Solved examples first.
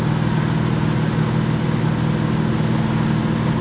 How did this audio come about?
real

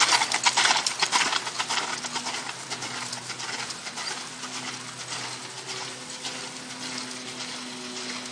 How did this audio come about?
real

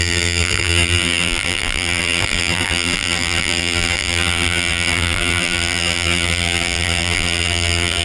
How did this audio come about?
fake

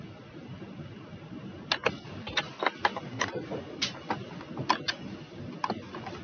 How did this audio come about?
real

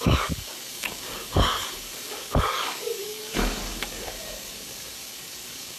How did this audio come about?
fake